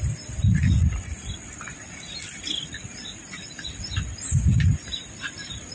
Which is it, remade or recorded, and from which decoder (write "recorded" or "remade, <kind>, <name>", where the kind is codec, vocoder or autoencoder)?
recorded